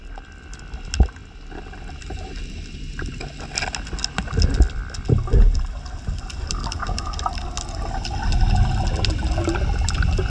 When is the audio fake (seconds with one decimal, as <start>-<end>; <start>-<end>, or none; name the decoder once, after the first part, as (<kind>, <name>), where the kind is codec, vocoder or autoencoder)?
none